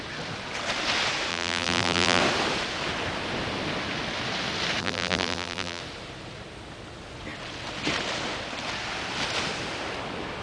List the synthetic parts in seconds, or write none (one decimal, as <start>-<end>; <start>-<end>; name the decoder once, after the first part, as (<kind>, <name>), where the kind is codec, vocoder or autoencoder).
1.3-2.2 (vocoder, BigVGAN v2); 4.8-5.8